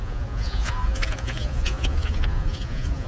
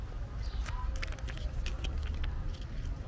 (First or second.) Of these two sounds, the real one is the second